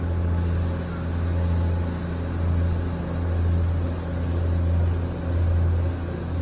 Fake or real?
real